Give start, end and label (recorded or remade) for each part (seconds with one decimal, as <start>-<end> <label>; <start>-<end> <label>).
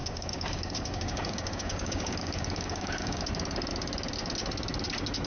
0.0-3.2 remade; 3.2-5.3 recorded